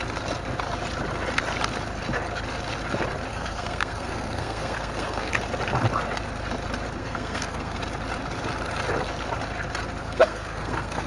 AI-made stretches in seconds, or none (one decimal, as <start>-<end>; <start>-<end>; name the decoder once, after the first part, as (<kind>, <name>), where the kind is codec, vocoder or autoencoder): 3.3-5.3 (codec, SNAC); 7.0-7.8; 10.0-11.1